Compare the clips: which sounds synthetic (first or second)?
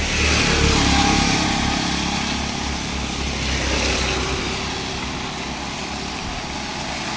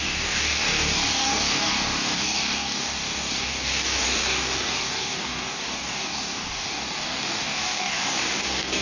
second